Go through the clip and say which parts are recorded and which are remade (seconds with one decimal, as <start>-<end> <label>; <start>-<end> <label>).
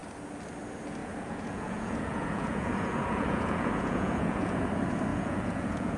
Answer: 0.0-1.0 recorded; 1.0-4.6 remade; 4.6-5.1 recorded; 5.1-6.0 remade